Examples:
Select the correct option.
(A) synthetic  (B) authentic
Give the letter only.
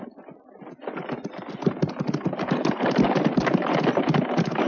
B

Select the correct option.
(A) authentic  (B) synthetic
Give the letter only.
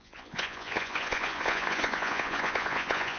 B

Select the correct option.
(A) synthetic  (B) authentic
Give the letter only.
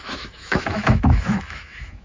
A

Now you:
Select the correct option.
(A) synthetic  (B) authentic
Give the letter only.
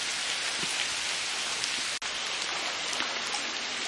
B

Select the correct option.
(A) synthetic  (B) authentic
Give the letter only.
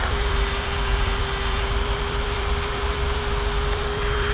A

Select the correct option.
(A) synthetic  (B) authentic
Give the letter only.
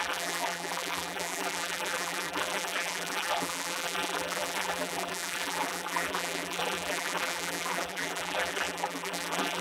A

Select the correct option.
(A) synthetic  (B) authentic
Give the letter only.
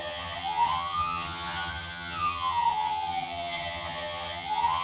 A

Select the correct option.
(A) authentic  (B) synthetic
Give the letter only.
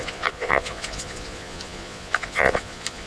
B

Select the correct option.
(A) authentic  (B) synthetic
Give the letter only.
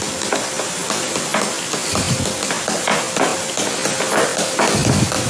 A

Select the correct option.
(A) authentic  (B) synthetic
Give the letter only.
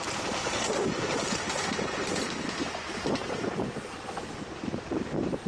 A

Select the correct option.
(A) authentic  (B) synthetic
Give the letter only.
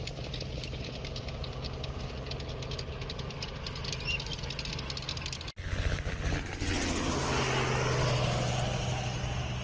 A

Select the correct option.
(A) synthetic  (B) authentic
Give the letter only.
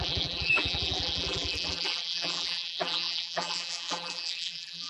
A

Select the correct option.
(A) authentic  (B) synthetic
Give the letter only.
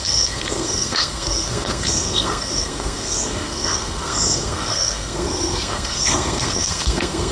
B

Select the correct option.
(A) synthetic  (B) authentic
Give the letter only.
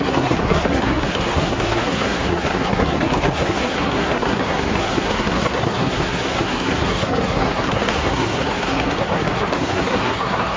A